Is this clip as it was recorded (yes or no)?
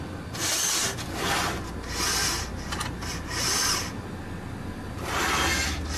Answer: yes